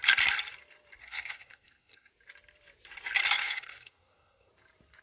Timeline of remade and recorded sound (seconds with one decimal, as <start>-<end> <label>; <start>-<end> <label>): 0.0-1.0 recorded; 1.0-2.1 remade; 2.1-3.4 recorded; 3.4-4.5 remade; 4.5-5.0 recorded